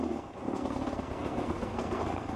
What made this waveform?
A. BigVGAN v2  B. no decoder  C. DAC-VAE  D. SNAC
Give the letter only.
D